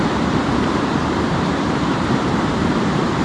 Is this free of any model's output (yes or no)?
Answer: no